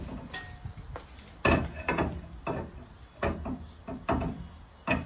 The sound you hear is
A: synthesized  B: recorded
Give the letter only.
B